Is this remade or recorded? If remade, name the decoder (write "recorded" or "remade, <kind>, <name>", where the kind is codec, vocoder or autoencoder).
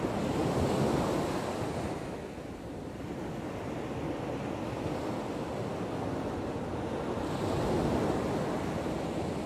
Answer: recorded